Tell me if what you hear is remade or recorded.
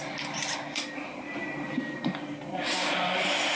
recorded